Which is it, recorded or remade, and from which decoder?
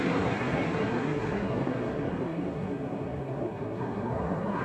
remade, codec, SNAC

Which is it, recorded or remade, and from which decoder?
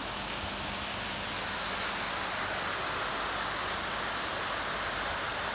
recorded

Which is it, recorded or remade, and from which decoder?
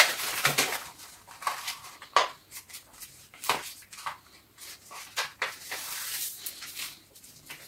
remade, vocoder, BigVGAN v2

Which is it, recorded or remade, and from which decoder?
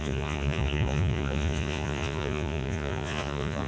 remade, vocoder, Vocos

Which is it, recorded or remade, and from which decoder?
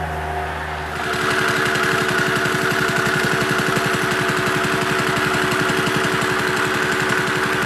recorded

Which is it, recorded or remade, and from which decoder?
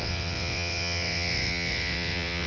remade, vocoder, WaveNeXt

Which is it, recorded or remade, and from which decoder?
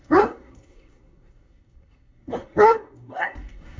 remade, codec, SNAC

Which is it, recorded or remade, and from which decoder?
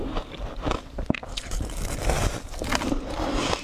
recorded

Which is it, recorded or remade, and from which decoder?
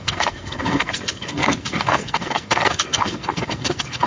remade, codec, SNAC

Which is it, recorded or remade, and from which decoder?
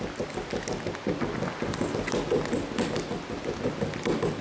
recorded